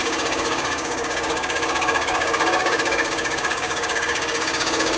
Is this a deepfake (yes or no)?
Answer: yes